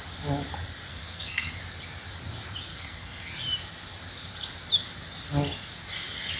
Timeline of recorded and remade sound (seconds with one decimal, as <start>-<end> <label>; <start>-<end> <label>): 0.0-0.9 recorded; 0.9-1.5 remade; 1.5-2.7 recorded; 2.7-3.3 remade; 3.3-6.4 recorded